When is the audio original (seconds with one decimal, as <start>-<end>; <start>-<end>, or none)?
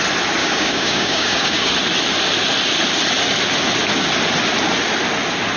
0.0-0.4; 1.7-5.6